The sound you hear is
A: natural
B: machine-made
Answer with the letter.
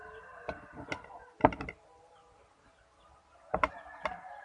A